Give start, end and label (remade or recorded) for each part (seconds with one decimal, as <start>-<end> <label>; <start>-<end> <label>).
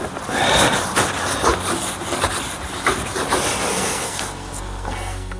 0.0-3.7 recorded; 3.7-5.4 remade